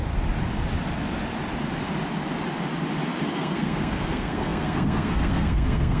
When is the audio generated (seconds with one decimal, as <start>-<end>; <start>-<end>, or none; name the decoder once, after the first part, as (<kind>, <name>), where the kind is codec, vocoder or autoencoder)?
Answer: 3.3-6.0 (codec, SNAC)